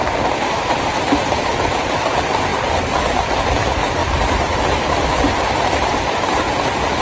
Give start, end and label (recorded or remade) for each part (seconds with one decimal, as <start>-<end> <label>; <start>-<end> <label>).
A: 0.0-7.0 remade